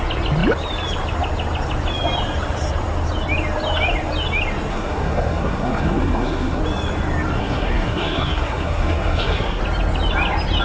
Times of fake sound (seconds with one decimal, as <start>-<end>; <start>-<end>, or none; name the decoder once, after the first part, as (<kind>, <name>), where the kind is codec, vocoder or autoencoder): 4.7-6.6 (codec, SNAC); 7.4-9.6